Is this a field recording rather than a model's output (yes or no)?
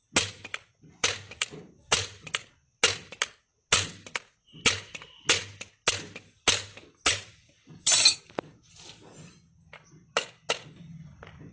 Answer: yes